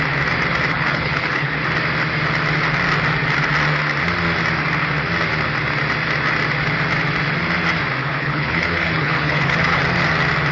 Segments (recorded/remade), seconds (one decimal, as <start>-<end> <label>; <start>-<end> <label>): 0.0-0.7 recorded; 0.7-1.5 remade; 1.5-8.0 recorded; 8.0-9.8 remade; 9.8-10.5 recorded